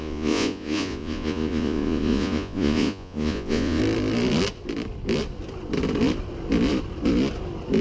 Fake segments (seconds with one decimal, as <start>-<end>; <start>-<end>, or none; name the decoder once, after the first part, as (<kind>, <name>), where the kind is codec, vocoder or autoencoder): 0.0-3.8 (vocoder, Vocos)